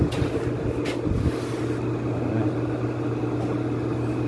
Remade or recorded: recorded